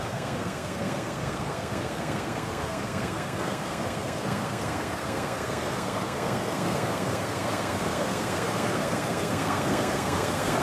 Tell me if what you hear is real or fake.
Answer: fake